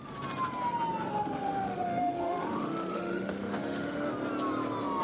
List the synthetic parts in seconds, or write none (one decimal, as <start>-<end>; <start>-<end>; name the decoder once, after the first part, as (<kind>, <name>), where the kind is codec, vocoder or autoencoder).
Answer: 1.1-4.1 (autoencoder, DAC-VAE)